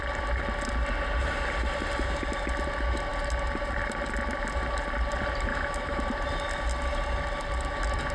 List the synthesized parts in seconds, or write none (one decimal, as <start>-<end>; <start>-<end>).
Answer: 5.5-6.0